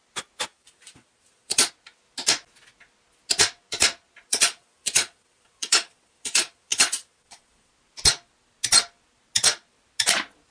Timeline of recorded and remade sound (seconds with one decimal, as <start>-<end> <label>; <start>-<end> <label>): 0.0-0.5 recorded; 0.5-1.7 remade; 1.7-4.3 recorded; 4.3-7.7 remade; 7.7-10.5 recorded